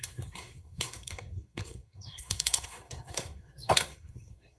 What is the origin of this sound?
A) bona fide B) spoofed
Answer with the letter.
B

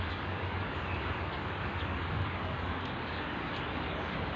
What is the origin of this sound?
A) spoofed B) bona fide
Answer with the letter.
A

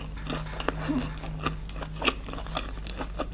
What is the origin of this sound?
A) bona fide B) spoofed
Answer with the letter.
A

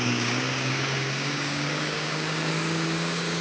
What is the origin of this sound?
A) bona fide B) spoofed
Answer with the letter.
B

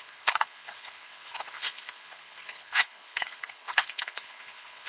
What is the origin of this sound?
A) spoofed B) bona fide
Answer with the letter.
A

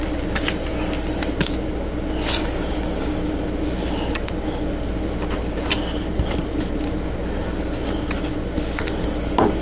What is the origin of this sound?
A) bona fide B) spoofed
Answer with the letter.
A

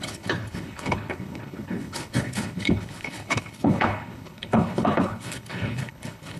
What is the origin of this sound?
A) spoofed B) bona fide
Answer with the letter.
A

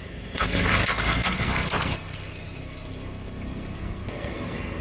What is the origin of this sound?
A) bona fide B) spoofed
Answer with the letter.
B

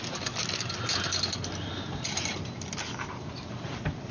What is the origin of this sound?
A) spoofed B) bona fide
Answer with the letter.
B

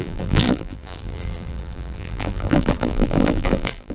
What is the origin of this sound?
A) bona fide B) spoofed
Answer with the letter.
B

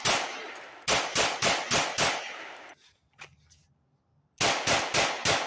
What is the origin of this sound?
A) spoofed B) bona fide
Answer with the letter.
B